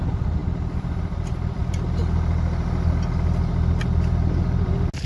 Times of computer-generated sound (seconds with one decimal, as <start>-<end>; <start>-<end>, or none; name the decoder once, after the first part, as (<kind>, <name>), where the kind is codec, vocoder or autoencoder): none